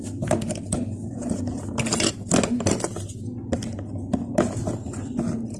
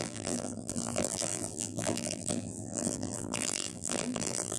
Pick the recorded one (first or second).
first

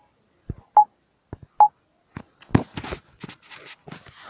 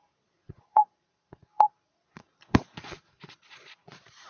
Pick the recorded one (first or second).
first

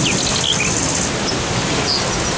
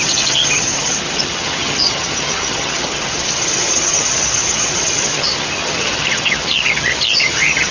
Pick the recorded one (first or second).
first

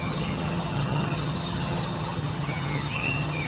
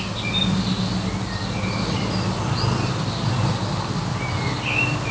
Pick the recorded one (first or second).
second